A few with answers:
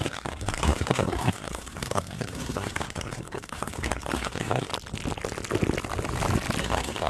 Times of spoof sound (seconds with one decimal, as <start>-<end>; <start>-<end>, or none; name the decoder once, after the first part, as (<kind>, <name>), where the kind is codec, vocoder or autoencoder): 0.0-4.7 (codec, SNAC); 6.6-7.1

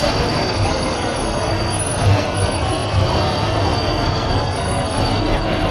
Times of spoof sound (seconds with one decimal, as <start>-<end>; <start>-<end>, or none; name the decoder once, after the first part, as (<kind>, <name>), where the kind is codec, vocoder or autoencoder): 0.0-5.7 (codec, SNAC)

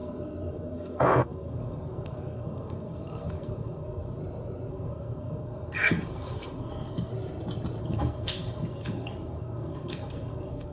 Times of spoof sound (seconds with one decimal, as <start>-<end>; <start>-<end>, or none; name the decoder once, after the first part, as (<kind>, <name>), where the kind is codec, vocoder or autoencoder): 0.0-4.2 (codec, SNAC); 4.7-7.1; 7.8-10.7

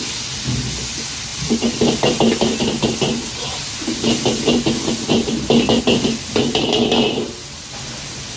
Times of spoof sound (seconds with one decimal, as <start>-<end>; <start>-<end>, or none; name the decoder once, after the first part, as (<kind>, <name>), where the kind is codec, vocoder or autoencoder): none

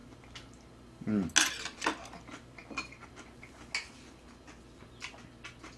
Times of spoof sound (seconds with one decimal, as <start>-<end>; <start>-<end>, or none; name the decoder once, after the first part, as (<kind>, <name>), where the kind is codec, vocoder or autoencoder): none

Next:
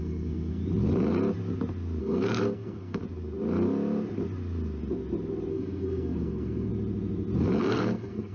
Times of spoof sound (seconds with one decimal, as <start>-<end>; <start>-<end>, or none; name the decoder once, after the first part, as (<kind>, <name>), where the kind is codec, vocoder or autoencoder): 0.0-0.6 (codec, SNAC); 2.0-3.0; 5.5-6.7; 7.6-8.3

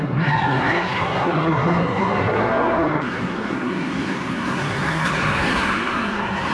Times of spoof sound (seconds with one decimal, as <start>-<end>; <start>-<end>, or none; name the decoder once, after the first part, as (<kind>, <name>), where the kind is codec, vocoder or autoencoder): 0.0-6.5 (codec, SNAC)

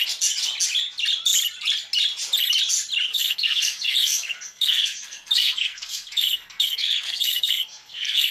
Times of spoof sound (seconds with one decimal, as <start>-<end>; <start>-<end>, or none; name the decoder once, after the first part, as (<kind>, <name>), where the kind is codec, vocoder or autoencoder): 3.1-8.3 (codec, SNAC)